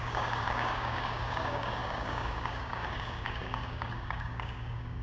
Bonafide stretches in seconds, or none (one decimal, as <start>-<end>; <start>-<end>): none